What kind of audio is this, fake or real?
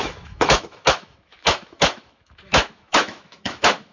fake